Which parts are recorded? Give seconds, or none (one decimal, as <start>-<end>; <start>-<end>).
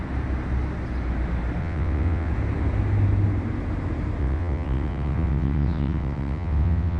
0.0-1.6; 2.3-4.2